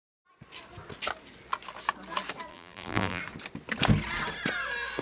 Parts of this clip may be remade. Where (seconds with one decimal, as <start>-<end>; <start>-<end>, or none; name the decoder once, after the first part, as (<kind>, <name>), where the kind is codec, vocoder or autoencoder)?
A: 2.5-3.2 (vocoder, BigVGAN v2)